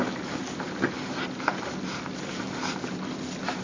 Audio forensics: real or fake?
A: real